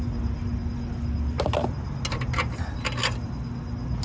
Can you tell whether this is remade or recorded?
recorded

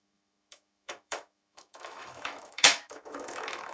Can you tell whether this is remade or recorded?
remade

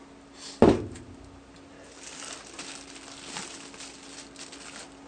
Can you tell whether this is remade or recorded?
recorded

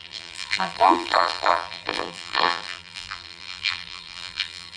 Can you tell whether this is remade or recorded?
remade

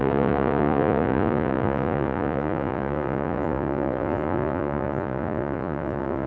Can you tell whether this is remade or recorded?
remade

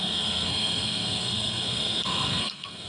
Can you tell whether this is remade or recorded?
remade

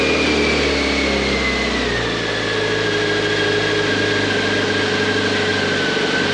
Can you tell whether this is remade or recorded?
recorded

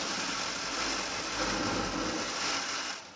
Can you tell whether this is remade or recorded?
recorded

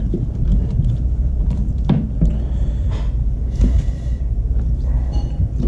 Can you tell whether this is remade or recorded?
remade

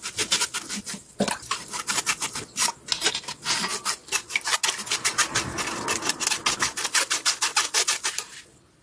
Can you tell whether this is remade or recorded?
recorded